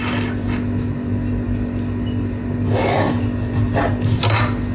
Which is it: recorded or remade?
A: recorded